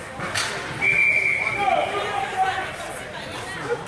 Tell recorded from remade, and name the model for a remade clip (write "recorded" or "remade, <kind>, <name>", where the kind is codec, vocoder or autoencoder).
recorded